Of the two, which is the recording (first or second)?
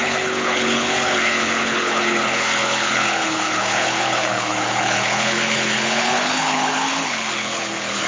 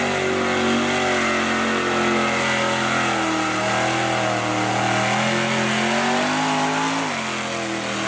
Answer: second